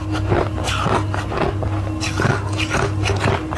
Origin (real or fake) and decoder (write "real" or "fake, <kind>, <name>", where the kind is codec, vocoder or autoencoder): real